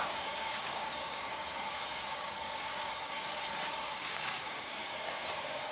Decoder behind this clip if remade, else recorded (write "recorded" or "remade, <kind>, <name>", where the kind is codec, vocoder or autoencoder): remade, codec, DAC